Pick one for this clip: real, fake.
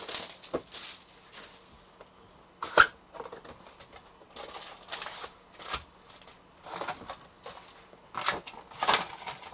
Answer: real